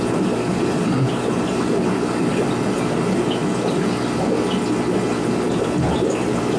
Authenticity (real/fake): real